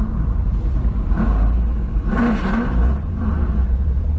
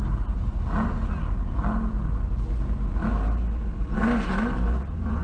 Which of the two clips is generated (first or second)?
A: first